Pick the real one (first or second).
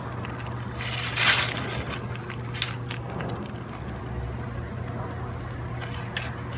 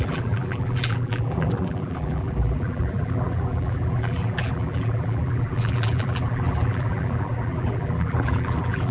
first